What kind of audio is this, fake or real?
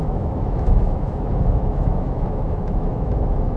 fake